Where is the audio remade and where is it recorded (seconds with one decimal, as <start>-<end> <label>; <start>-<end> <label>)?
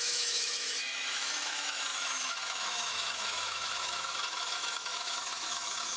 0.0-6.0 remade